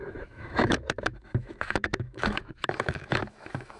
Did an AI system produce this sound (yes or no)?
yes